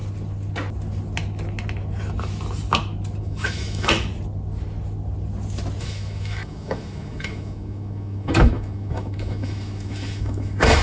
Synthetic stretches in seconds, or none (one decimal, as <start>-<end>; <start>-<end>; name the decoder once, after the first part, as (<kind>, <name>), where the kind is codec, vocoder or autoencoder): 3.2-4.1 (autoencoder, DAC-VAE); 5.8-10.8